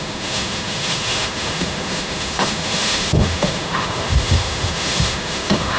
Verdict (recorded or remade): remade